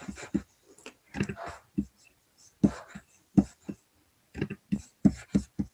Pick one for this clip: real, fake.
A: fake